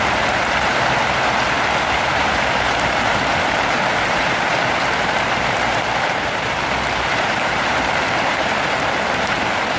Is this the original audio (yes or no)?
no